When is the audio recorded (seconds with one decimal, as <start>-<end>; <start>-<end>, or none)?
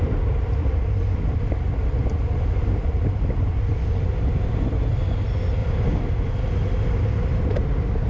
0.0-2.0; 3.0-5.6; 6.2-8.1